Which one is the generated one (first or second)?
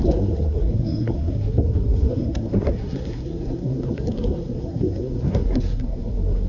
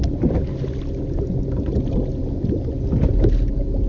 first